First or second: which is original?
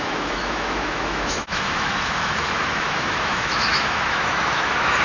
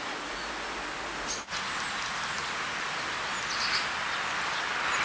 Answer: second